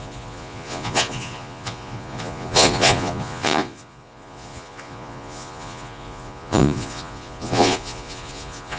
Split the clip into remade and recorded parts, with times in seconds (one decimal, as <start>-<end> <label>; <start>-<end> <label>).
0.0-8.8 remade